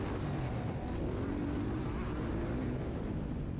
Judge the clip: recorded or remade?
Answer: recorded